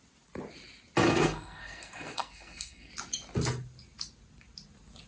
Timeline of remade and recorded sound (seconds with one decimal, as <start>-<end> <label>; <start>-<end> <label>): 0.0-1.0 recorded; 1.0-2.9 remade; 2.9-5.1 recorded